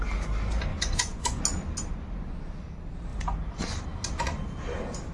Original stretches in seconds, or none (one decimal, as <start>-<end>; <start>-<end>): 0.0-0.7; 1.4-5.1